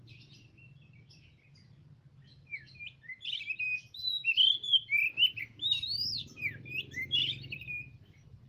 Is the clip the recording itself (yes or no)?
yes